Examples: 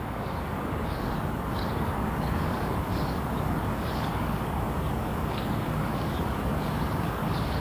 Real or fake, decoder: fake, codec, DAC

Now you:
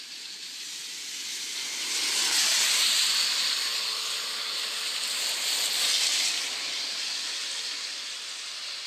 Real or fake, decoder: real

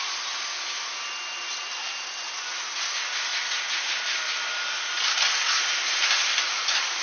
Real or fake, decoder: real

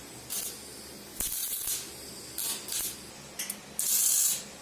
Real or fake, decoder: real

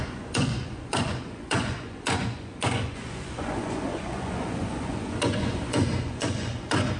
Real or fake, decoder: fake, vocoder, Vocos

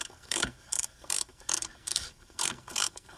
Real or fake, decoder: fake, codec, SNAC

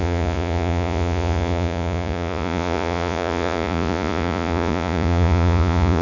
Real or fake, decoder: fake, vocoder, Vocos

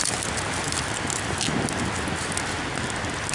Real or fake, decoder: real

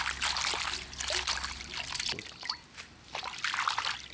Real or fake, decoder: real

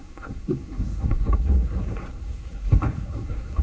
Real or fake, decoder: fake, codec, SNAC